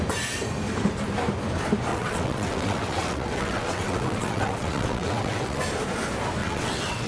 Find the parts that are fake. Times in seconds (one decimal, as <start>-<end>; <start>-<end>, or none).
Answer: 1.9-5.6; 6.4-7.1